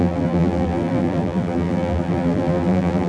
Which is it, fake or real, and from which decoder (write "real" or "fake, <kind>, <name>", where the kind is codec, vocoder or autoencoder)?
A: fake, vocoder, BigVGAN v2